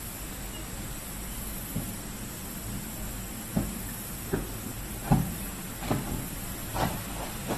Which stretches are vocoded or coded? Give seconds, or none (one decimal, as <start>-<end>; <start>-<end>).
none